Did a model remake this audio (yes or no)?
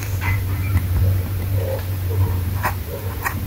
yes